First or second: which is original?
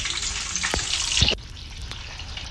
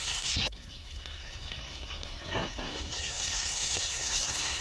first